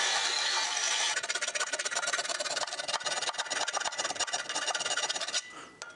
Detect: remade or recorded recorded